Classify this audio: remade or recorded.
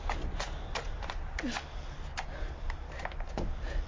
recorded